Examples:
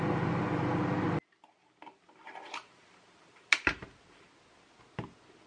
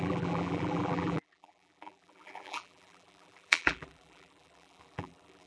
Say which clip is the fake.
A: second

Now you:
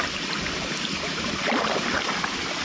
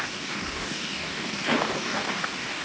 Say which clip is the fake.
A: second